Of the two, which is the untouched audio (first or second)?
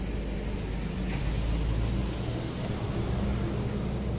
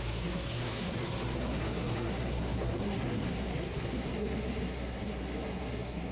first